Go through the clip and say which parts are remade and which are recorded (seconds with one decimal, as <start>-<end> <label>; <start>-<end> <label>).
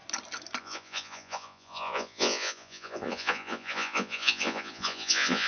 0.0-0.6 recorded; 0.6-5.5 remade